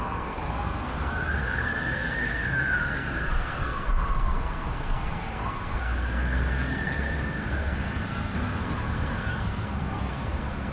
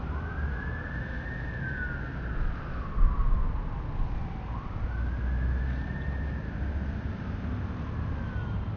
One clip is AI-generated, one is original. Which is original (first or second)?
second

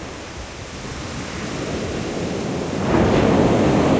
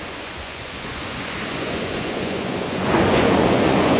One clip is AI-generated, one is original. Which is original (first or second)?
first